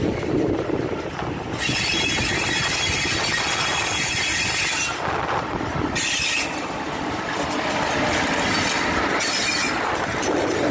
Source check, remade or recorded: recorded